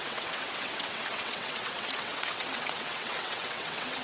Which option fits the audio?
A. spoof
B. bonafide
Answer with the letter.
A